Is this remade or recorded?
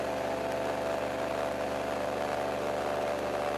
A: recorded